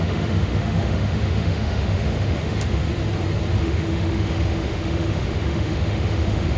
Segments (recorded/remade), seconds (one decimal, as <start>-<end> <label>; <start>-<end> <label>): 0.0-2.8 remade; 2.8-3.6 recorded; 3.6-6.6 remade